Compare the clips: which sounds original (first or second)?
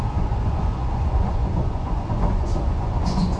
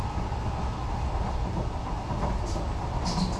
second